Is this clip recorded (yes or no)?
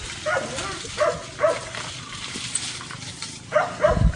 yes